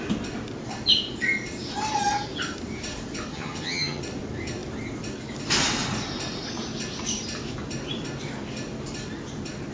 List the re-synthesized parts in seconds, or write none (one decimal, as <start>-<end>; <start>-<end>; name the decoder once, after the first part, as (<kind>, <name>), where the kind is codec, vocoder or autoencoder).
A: 3.3-4.0 (vocoder, HiFi-GAN)